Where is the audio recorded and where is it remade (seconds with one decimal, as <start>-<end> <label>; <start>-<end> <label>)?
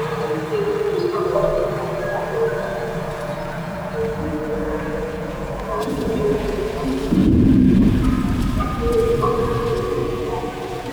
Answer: 0.0-2.5 recorded; 2.5-6.6 remade; 6.6-7.2 recorded; 7.2-8.0 remade; 8.0-10.0 recorded; 10.0-10.9 remade